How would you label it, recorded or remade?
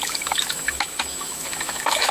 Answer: remade